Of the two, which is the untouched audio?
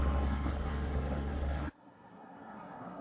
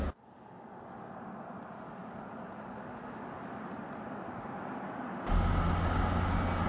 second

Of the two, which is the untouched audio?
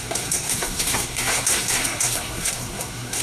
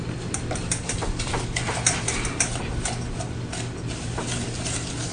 second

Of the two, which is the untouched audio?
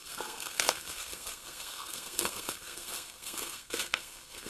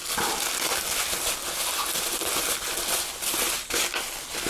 second